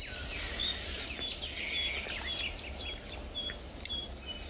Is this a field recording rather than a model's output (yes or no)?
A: yes